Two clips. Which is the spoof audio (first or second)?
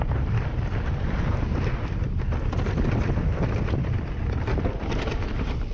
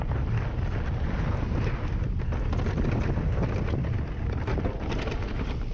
first